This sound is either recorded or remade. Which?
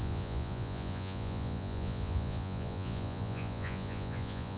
remade